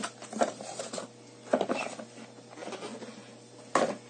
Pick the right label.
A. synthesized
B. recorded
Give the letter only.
B